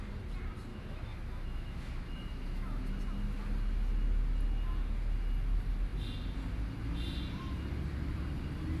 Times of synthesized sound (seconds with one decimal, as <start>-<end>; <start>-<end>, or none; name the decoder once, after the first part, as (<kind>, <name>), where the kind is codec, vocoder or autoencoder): 0.7-2.8 (autoencoder, DAC-VAE)